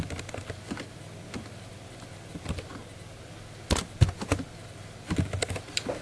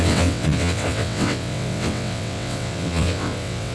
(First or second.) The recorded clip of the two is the first